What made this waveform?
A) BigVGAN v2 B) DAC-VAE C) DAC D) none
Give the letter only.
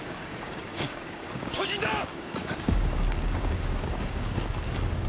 C